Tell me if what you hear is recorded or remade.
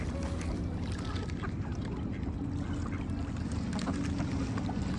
recorded